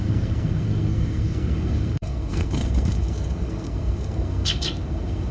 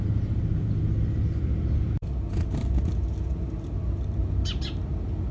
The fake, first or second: first